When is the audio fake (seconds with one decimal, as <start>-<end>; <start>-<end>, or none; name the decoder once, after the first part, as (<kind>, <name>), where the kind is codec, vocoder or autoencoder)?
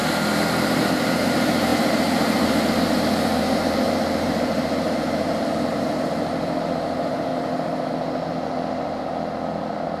0.6-7.3 (vocoder, BigVGAN v2); 9.6-10.0